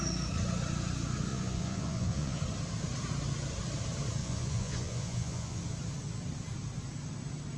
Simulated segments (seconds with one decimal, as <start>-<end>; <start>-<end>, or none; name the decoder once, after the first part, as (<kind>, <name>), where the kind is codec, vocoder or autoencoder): 1.3-2.4 (vocoder, Vocos); 4.2-5.6